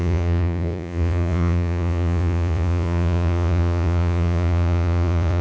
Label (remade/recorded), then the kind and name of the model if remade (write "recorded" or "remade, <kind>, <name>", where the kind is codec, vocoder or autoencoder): remade, vocoder, Vocos